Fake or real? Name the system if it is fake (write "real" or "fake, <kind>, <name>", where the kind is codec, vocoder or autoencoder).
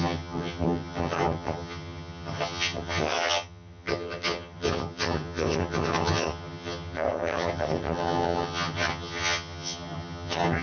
fake, vocoder, HiFi-GAN